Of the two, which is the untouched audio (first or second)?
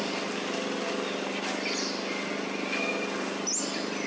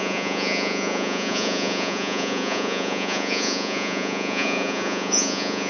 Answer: first